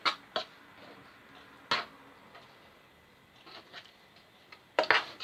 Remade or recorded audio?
recorded